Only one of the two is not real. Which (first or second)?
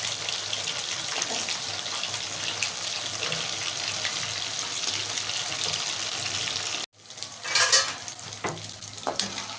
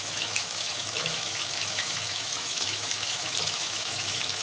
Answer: second